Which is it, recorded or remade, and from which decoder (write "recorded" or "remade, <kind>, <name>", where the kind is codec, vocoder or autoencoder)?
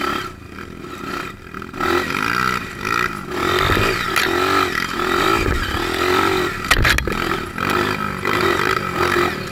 recorded